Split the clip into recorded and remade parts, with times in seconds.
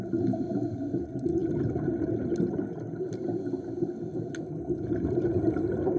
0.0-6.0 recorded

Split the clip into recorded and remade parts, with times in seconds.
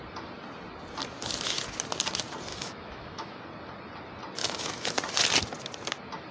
0.0-2.5 recorded; 2.5-3.4 remade; 3.4-4.4 recorded; 4.4-4.9 remade; 4.9-6.3 recorded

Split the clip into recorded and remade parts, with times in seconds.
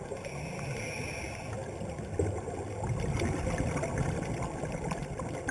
0.0-5.5 recorded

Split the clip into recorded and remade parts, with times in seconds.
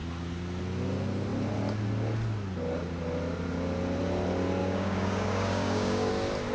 0.0-4.6 recorded; 4.6-6.1 remade; 6.1-6.5 recorded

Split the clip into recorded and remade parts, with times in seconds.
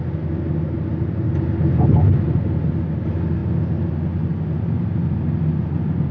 0.0-6.1 recorded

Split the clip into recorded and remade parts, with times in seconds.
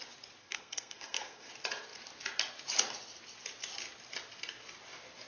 0.0-0.4 recorded; 0.4-1.5 remade; 1.5-5.3 recorded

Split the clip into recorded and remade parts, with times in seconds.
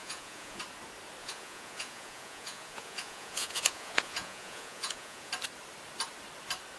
0.0-0.6 remade; 0.6-1.2 recorded; 1.2-5.3 remade; 5.3-6.8 recorded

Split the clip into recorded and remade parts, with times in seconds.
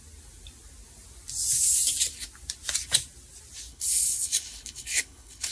0.0-3.7 recorded; 3.7-5.5 remade